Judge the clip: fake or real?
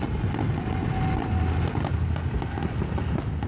real